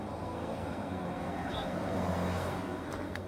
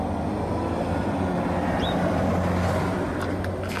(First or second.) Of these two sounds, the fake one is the first